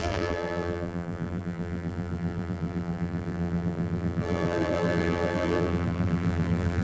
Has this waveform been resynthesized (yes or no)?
yes